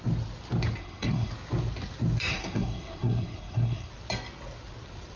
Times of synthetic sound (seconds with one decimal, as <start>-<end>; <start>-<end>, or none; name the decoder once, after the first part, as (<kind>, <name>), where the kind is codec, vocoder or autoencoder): 0.8-1.3 (codec, SNAC); 2.3-3.9